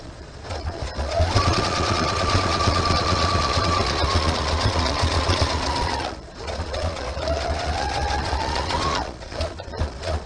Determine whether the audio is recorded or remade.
remade